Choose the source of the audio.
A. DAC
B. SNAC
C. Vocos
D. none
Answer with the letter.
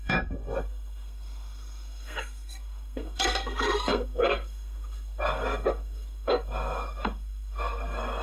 B